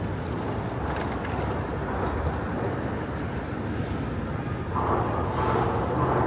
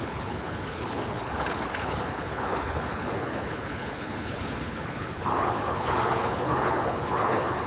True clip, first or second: first